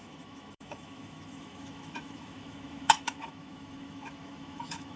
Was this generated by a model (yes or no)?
yes